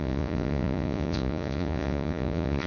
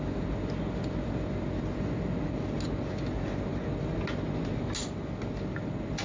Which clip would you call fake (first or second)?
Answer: first